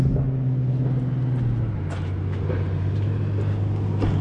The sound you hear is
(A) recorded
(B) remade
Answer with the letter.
A